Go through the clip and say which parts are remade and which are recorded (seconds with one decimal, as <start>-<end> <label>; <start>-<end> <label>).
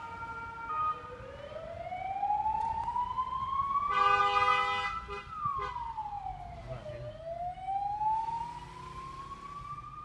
0.0-10.0 recorded